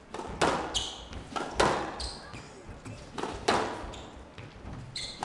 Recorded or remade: recorded